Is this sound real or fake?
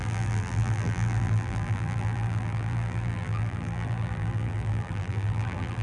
fake